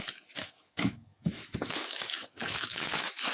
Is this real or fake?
fake